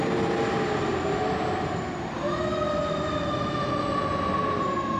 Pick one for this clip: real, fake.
real